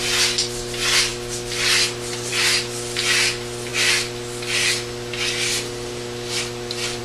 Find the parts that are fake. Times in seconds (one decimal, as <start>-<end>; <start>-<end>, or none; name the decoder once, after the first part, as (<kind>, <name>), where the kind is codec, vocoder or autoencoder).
none